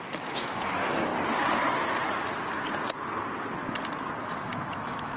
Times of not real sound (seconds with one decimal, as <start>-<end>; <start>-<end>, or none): 0.0-1.1; 4.2-5.2